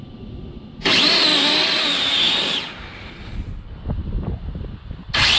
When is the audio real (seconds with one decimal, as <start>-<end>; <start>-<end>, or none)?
0.0-4.0